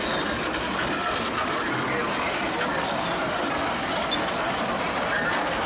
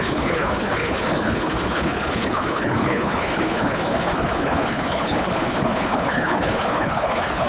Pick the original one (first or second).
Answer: first